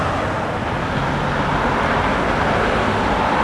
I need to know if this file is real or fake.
real